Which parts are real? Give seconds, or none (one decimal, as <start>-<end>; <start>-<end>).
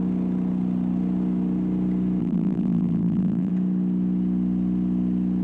0.0-2.2; 3.5-5.4